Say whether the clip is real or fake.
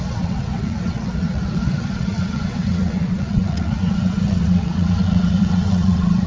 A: fake